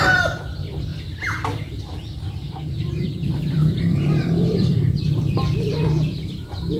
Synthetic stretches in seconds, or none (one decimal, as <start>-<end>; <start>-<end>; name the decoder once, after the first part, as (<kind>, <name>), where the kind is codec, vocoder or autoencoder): 0.0-0.9 (vocoder, BigVGAN v2); 2.6-6.8